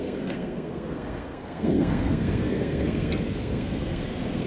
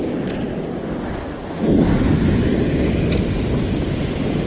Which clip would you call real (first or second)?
second